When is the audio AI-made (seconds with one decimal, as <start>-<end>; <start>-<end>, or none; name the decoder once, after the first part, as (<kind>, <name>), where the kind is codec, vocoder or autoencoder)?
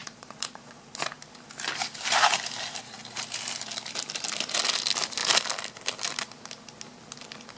0.0-0.9 (vocoder, Vocos)